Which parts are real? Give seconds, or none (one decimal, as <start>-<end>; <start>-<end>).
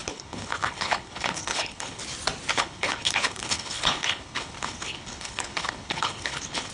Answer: 2.0-2.5